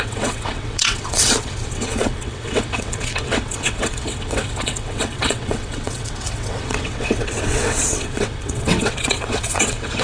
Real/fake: fake